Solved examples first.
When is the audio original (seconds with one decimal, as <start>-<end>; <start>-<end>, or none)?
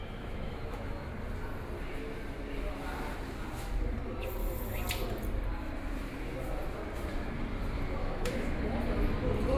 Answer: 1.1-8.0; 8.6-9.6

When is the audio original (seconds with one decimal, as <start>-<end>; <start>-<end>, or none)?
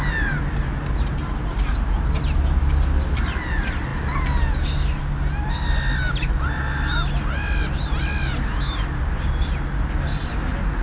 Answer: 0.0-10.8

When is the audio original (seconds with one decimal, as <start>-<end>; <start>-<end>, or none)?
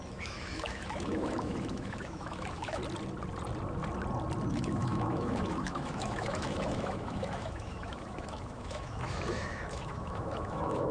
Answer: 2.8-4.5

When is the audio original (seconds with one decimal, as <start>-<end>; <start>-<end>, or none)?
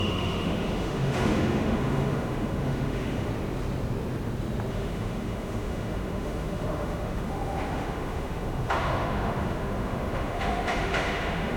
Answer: 3.3-4.7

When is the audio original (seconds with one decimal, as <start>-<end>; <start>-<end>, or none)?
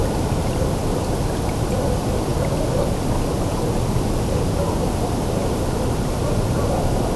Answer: 0.0-7.2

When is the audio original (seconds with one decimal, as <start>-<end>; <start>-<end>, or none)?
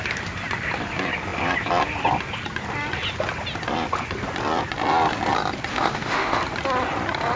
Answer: 0.0-5.7; 6.4-7.4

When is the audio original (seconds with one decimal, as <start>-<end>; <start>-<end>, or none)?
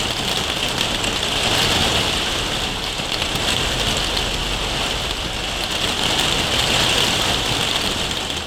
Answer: 0.0-8.5